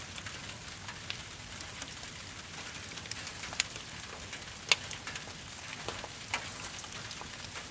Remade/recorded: recorded